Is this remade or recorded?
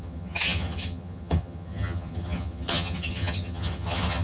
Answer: remade